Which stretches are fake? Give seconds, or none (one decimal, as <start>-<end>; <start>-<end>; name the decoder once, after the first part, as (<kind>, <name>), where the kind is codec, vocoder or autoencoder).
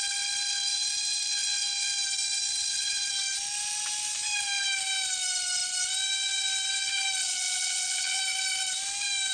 7.2-8.2 (vocoder, WaveNeXt)